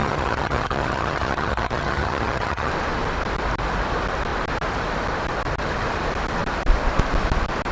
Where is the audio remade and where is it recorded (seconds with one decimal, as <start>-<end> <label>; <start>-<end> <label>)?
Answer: 0.0-2.7 remade; 2.7-7.7 recorded